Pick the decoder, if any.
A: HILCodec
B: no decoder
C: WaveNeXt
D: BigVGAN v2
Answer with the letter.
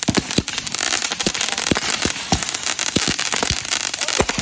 B